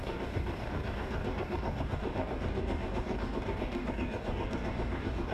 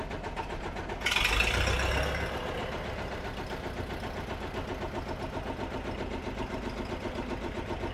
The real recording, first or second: second